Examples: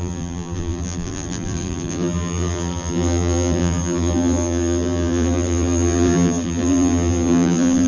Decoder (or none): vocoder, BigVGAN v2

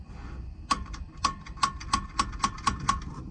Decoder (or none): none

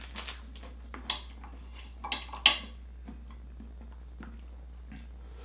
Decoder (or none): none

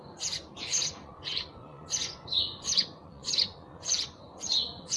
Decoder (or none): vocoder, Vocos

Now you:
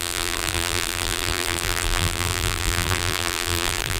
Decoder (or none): vocoder, BigVGAN v2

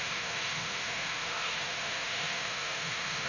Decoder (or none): autoencoder, DAC-VAE